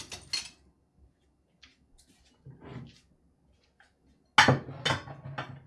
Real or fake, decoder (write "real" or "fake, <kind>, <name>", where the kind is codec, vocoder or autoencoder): real